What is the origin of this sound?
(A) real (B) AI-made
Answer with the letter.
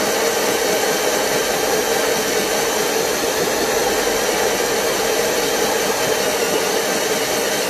A